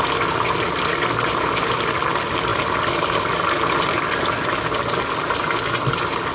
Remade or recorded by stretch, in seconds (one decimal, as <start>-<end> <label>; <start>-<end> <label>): 0.0-6.3 recorded